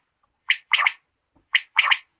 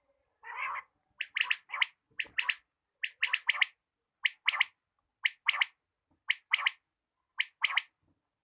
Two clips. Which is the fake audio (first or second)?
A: first